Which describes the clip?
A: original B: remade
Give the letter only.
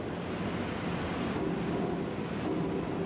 A